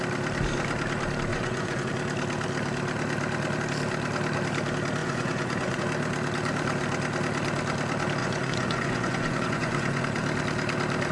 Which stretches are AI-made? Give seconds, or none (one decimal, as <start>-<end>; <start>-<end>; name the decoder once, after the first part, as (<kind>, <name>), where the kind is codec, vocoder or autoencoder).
1.3-1.9 (vocoder, Vocos); 5.0-5.8; 8.2-10.0